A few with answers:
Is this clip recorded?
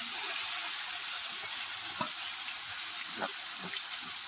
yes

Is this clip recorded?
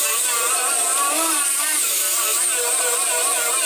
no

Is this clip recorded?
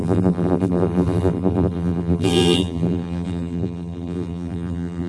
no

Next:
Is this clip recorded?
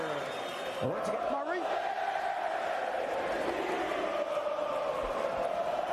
yes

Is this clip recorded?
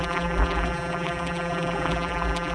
no